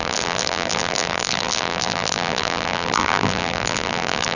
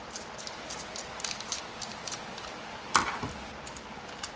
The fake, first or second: first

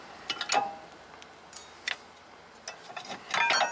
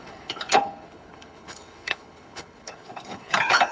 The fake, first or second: second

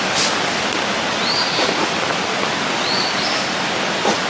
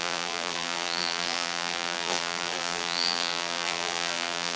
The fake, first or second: second